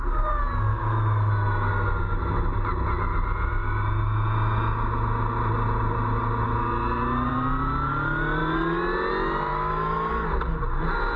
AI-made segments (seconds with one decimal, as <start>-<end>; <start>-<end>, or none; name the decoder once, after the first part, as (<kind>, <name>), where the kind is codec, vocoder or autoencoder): 0.7-1.7 (autoencoder, DAC-VAE); 9.5-10.1